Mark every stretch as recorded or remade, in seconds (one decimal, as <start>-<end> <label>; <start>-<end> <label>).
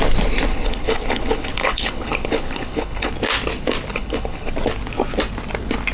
0.0-0.5 recorded; 0.5-3.1 remade; 3.1-3.9 recorded; 3.9-4.5 remade; 4.5-5.9 recorded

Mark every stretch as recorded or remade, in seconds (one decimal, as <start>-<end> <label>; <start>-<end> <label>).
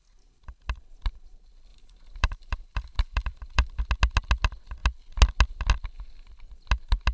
0.0-1.7 recorded; 1.7-3.8 remade; 3.8-7.1 recorded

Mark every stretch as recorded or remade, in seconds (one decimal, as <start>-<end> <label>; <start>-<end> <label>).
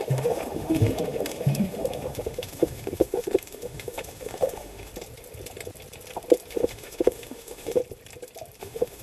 0.0-4.9 remade; 4.9-6.5 recorded; 6.5-7.8 remade; 7.8-8.6 recorded; 8.6-9.0 remade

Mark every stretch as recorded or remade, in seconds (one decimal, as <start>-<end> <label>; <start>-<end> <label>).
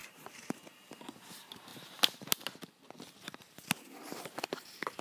0.0-5.0 recorded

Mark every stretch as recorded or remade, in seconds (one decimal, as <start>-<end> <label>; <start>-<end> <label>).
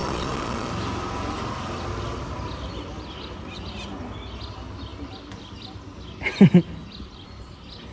0.0-0.7 remade; 0.7-7.9 recorded